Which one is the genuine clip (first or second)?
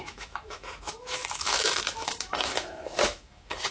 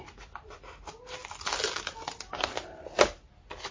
second